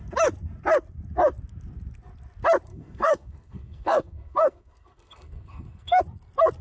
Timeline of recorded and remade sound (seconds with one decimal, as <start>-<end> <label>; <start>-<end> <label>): 0.0-2.7 recorded; 2.7-6.0 remade; 6.0-6.6 recorded